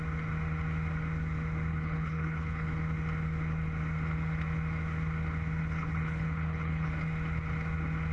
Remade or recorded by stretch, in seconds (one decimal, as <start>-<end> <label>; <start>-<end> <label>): 0.0-1.7 recorded; 1.7-2.7 remade; 2.7-5.6 recorded; 5.6-6.9 remade; 6.9-8.1 recorded